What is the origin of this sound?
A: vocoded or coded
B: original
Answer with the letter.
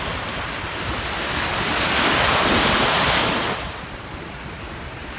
B